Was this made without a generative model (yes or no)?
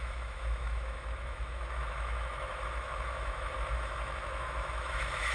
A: no